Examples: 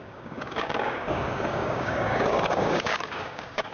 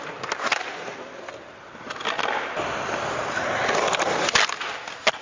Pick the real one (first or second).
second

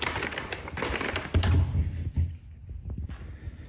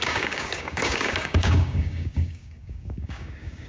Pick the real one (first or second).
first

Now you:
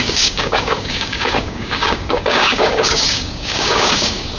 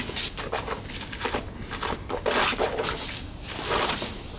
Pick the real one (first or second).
second